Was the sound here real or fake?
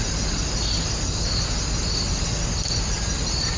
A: real